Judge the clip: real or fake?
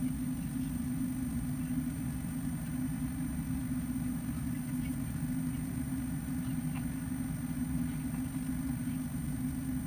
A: real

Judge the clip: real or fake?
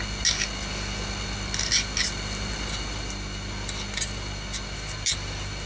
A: real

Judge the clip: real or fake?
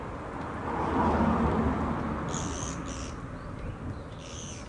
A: real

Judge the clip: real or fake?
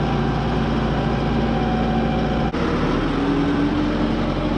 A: real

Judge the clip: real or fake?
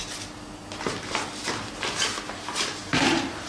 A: real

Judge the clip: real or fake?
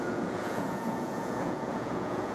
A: fake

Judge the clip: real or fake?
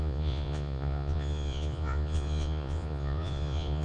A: fake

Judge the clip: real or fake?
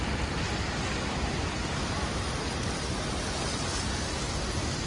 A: real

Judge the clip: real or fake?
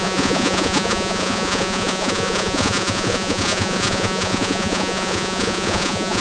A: fake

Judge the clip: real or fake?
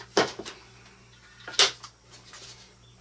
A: real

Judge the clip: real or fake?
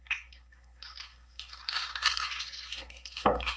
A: fake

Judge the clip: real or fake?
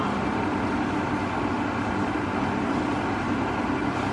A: fake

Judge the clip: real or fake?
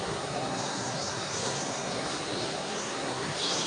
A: fake